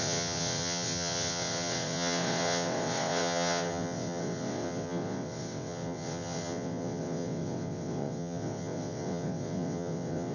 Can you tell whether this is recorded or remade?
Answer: remade